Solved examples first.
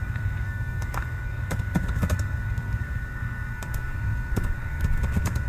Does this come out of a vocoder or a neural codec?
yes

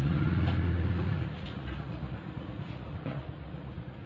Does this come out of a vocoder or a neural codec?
yes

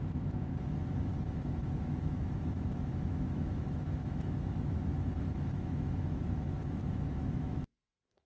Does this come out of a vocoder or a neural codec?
yes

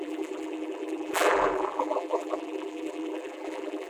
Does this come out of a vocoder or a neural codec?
yes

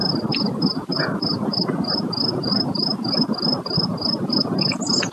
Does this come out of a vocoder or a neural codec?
no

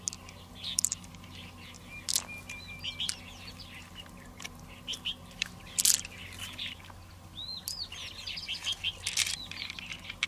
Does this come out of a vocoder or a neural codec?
no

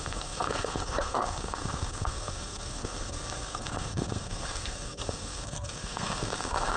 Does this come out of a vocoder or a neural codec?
yes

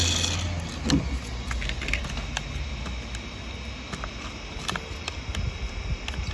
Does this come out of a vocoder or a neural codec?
no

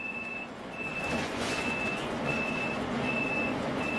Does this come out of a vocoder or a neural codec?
yes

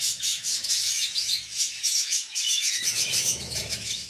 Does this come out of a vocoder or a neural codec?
yes